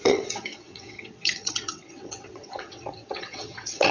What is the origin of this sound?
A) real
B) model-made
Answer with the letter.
B